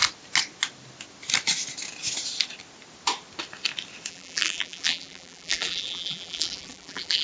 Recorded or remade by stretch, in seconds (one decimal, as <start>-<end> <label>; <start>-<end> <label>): 0.0-4.1 recorded; 4.1-7.2 remade